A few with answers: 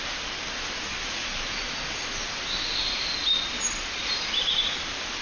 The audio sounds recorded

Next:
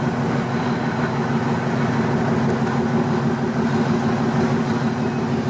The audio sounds recorded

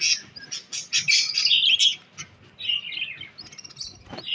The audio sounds recorded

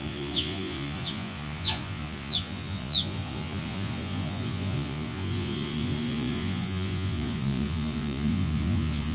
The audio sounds remade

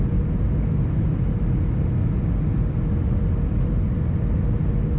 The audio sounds recorded